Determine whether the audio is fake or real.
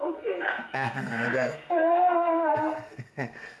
fake